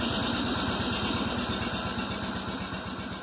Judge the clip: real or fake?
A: real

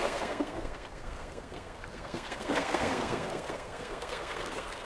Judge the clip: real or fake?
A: fake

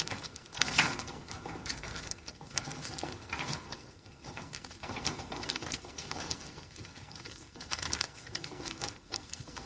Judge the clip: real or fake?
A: fake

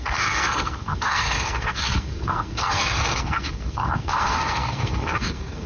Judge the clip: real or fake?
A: fake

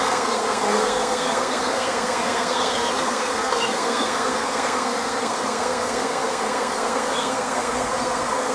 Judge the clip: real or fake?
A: fake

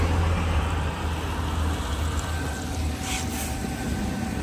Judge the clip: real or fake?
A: real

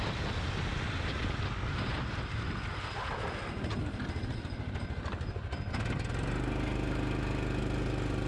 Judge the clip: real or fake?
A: real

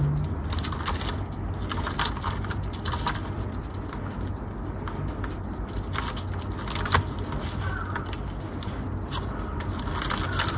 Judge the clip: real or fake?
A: real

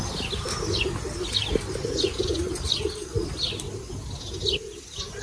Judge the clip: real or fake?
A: real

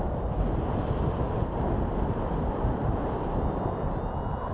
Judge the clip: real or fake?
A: real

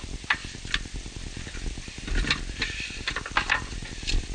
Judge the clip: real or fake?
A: real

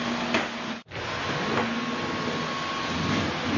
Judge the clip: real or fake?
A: real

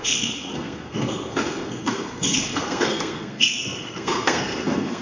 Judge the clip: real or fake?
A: fake